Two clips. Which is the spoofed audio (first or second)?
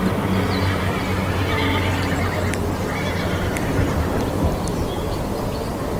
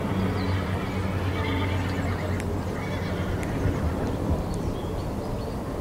first